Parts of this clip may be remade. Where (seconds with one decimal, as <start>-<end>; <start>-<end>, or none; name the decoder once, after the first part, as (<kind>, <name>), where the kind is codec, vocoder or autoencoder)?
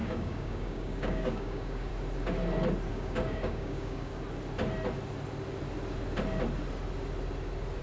0.0-1.9 (codec, DAC); 2.9-4.1